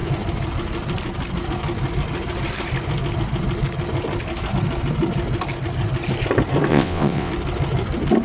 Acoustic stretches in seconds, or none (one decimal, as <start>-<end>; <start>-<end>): 0.0-6.7; 7.3-8.2